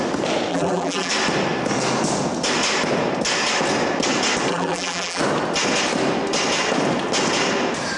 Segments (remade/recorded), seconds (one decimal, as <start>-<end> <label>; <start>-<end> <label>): 0.0-0.5 recorded; 0.5-1.1 remade; 1.1-4.5 recorded; 4.5-5.2 remade; 5.2-8.0 recorded